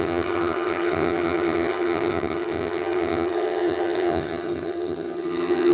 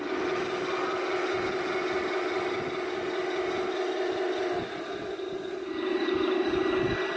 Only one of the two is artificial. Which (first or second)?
first